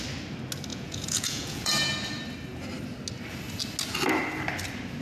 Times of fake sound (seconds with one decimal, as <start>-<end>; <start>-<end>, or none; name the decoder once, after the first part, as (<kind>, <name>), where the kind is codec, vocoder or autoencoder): 0.7-1.7 (vocoder, Vocos)